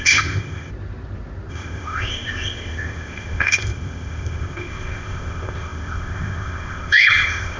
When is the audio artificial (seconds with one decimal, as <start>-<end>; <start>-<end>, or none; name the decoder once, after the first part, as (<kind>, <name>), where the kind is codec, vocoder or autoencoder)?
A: 0.0-0.7 (codec, ZipCodec); 1.5-7.6